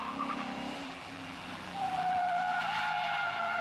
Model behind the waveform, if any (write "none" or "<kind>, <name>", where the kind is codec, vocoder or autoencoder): vocoder, BigVGAN v2